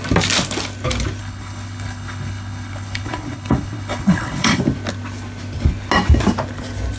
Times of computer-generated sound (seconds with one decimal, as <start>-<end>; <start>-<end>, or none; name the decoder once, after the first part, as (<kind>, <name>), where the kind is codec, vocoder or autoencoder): 1.2-4.6 (codec, HILCodec)